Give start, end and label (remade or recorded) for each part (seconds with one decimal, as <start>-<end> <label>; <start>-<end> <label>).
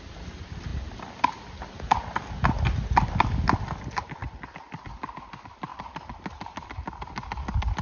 0.0-7.8 recorded